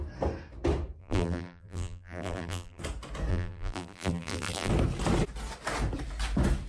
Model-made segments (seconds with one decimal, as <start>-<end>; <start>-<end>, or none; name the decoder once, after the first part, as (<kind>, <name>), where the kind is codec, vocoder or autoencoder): 1.0-2.8 (vocoder, BigVGAN v2); 3.3-4.7